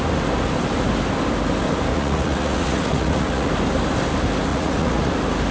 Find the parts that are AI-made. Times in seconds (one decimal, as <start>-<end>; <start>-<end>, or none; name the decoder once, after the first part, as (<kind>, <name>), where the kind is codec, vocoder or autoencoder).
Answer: 1.9-3.5 (vocoder, Vocos); 4.5-5.1